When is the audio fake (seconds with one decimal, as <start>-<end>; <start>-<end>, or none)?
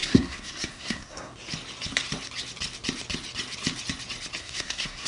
0.0-1.3; 4.4-5.1